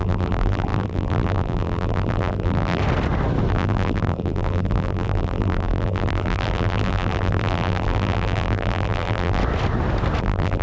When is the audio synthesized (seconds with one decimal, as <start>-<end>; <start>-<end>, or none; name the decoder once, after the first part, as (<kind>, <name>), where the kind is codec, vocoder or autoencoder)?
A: 0.0-2.8 (vocoder, BigVGAN v2); 3.5-9.4; 10.2-10.6